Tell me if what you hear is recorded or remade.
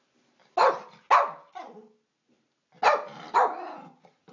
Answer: recorded